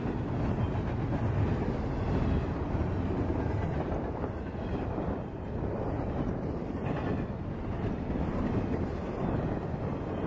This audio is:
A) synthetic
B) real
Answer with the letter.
B